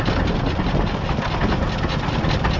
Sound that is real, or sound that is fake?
real